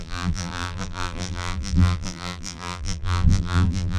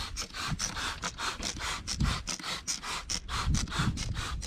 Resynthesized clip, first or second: first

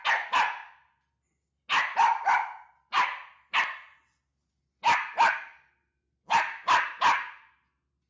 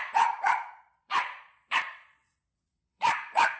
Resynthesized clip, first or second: second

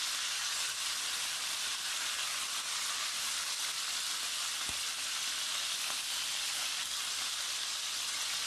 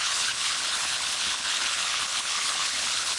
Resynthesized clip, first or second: second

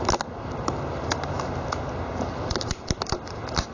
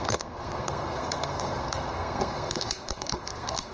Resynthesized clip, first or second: second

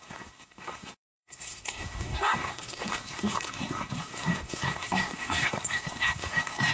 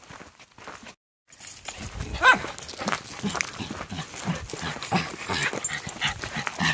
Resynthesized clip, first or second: first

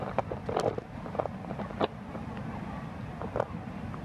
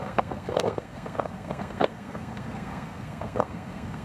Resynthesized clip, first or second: second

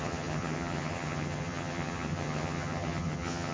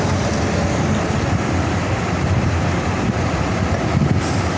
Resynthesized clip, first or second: first